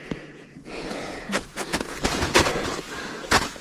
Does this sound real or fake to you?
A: fake